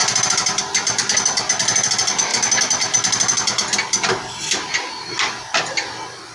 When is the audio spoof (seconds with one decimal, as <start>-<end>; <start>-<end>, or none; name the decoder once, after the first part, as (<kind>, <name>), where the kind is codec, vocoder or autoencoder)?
none

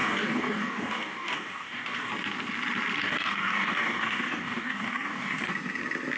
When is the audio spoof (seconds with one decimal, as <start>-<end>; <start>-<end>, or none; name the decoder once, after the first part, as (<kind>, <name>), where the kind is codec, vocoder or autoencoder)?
0.0-2.1 (codec, DAC); 3.0-5.5

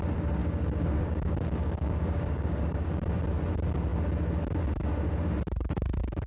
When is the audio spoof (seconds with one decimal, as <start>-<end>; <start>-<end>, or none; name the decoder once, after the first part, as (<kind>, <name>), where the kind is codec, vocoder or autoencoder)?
0.4-3.1 (codec, DAC)